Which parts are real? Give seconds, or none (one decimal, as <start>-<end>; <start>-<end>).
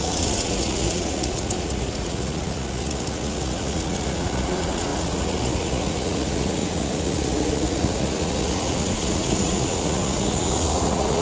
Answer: none